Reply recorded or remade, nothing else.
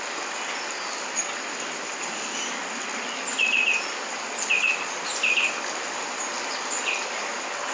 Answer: recorded